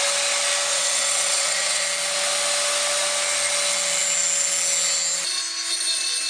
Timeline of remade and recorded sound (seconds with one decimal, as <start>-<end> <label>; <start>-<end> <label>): 0.0-0.7 recorded; 0.7-1.8 remade; 1.8-6.3 recorded